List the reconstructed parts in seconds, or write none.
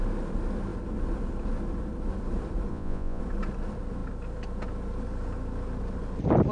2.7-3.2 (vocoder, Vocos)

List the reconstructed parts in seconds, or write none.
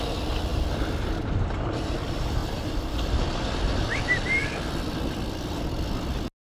0.5-1.4 (vocoder, BigVGAN v2); 2.4-4.0; 4.4-5.6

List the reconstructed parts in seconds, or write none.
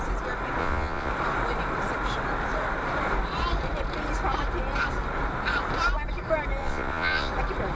0.6-1.1 (vocoder, Vocos); 6.6-7.3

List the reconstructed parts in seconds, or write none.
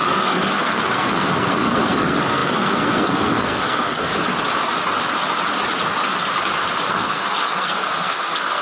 0.0-4.1 (codec, SNAC); 6.9-8.6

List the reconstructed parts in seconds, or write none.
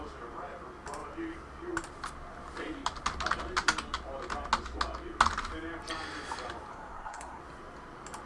6.7-7.4 (codec, SNAC)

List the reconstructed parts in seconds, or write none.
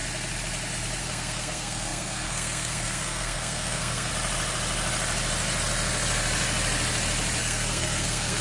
1.0-4.1 (codec, SNAC); 7.4-8.4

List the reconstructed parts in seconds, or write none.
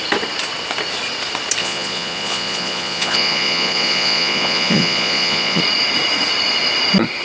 1.6-5.6 (vocoder, Vocos)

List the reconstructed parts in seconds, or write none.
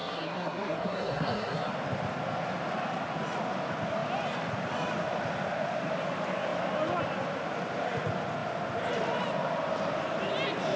0.0-1.7 (codec, SNAC)